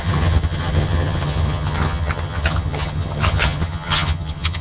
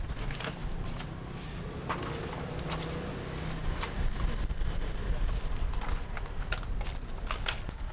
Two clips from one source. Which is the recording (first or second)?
second